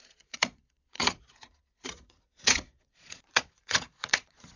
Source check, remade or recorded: remade